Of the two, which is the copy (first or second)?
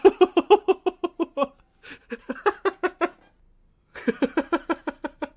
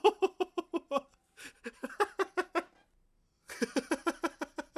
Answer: second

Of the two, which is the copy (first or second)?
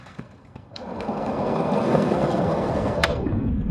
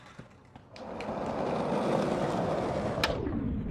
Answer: first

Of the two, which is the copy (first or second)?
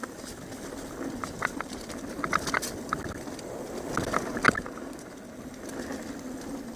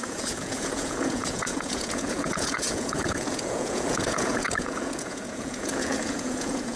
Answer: second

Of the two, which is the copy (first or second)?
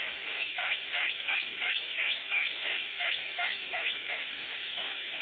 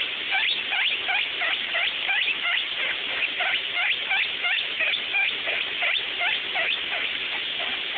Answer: first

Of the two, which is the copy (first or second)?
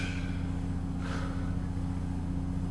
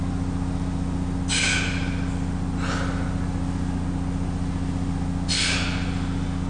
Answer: first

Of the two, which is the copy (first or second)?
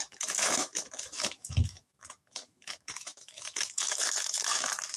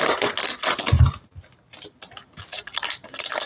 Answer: first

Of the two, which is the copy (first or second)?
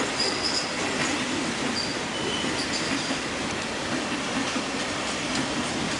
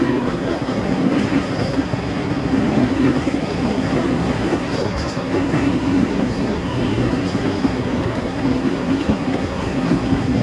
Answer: second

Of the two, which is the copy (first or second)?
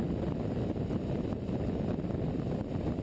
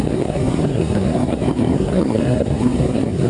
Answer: second